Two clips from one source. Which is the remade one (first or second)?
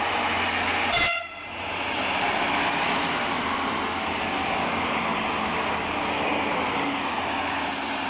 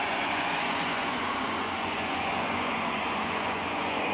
second